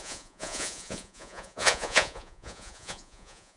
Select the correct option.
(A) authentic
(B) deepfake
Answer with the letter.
B